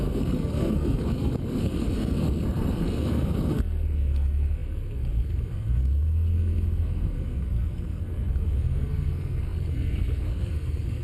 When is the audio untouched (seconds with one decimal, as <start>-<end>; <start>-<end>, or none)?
none